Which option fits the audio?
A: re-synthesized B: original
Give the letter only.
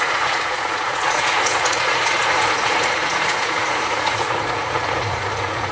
A